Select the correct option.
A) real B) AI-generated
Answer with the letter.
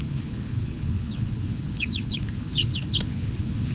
B